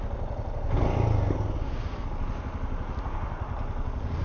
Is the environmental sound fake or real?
real